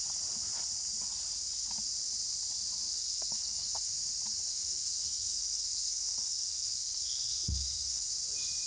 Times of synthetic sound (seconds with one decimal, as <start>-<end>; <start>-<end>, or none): 2.9-3.9; 4.5-8.1